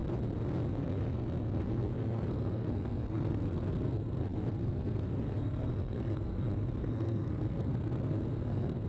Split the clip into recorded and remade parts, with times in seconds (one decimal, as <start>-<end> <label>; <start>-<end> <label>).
0.0-0.7 recorded; 0.7-8.9 remade